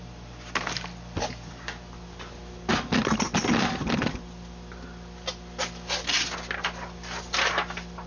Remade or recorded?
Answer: recorded